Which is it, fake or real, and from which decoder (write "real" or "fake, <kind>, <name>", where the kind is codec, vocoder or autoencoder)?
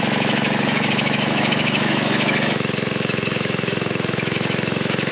fake, autoencoder, DAC-VAE